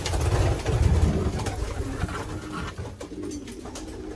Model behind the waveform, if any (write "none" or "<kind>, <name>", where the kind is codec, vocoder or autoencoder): none